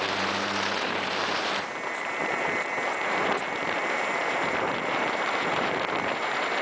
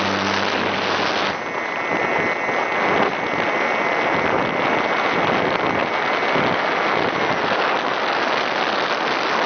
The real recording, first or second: second